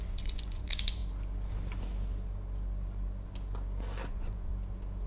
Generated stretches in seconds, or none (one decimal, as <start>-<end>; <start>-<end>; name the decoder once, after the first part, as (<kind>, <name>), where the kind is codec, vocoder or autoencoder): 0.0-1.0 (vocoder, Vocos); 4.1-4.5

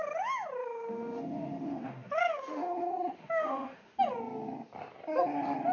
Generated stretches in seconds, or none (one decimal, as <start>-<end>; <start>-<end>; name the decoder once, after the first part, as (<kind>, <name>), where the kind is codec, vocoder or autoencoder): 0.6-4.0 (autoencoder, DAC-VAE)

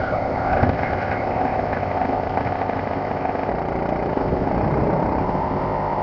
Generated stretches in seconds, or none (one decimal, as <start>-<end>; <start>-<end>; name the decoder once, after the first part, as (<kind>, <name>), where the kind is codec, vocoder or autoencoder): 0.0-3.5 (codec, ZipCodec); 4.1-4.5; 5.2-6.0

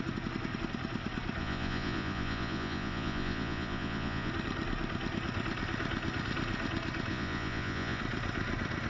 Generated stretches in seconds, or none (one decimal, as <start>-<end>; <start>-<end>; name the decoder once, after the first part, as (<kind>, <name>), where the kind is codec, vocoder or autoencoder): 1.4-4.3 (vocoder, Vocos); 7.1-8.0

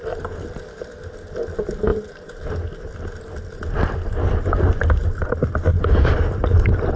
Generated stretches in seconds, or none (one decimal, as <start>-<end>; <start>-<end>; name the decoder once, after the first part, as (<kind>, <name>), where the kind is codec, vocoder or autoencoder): none